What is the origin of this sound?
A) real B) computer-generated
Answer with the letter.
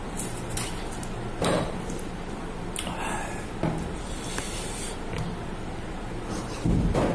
B